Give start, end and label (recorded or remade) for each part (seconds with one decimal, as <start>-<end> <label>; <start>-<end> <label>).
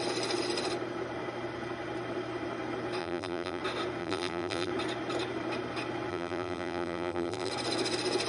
0.0-3.0 recorded; 3.0-3.6 remade; 3.6-4.0 recorded; 4.0-4.7 remade; 4.7-6.1 recorded; 6.1-7.5 remade; 7.5-8.3 recorded